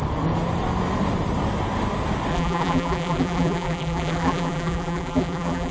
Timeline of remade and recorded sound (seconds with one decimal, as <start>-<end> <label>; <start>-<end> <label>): 0.0-2.3 recorded; 2.3-5.7 remade